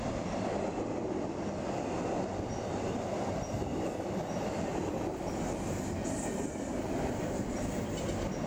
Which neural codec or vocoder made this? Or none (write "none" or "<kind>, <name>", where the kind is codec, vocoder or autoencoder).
none